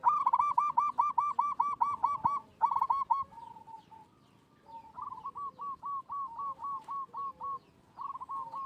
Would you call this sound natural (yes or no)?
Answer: yes